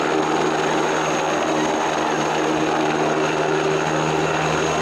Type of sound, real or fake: real